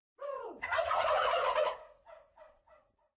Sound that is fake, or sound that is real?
fake